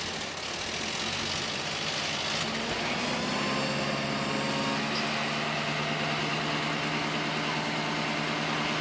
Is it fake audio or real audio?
real